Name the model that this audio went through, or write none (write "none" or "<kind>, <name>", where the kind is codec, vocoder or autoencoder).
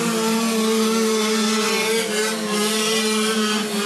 none